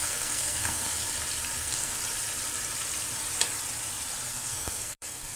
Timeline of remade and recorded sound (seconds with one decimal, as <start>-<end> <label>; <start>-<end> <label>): 0.0-1.0 remade; 1.0-1.6 recorded; 1.6-2.0 remade; 2.0-4.3 recorded; 4.3-5.4 remade